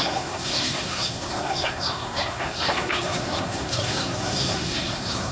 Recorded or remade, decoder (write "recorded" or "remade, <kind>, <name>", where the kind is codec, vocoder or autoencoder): remade, codec, SNAC